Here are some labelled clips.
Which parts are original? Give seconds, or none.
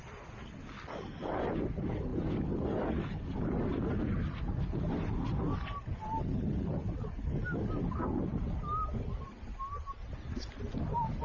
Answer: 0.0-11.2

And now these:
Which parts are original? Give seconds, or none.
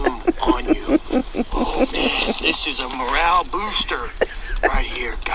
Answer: 0.0-5.3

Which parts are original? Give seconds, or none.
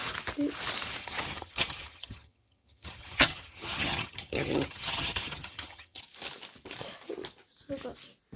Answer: 0.0-1.0; 6.0-8.4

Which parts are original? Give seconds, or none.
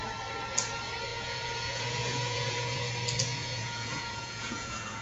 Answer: 0.0-1.1; 2.9-3.3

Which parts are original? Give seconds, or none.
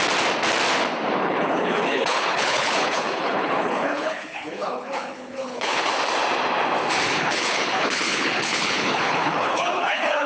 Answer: 0.0-1.2; 5.9-7.2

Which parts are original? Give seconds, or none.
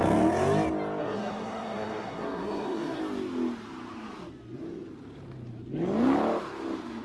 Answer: 0.0-1.0; 3.0-7.0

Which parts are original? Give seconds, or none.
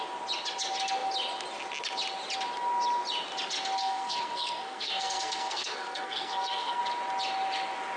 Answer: 0.0-3.8; 6.8-8.0